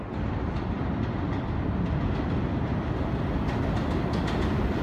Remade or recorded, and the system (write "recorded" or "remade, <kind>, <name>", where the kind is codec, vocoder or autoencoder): recorded